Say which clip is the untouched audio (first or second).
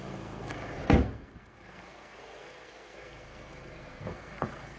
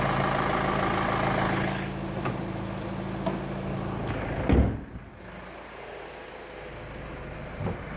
second